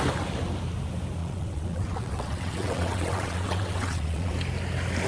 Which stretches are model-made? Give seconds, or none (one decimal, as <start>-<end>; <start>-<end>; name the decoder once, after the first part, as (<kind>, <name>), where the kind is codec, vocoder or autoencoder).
1.2-4.3 (vocoder, WaveNeXt)